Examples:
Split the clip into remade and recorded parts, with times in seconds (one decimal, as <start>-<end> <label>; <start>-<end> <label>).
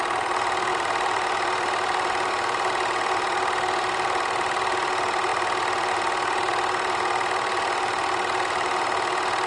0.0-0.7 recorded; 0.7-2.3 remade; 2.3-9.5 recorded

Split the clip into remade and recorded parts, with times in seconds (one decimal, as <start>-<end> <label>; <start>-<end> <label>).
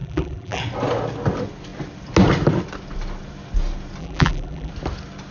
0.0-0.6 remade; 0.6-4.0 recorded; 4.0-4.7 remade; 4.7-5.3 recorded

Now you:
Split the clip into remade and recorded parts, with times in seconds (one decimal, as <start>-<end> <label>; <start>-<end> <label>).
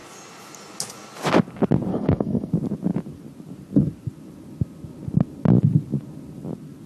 0.0-1.9 recorded; 1.9-2.5 remade; 2.5-6.9 recorded